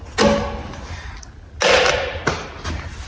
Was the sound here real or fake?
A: real